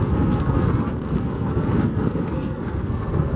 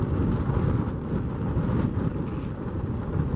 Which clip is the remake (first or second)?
first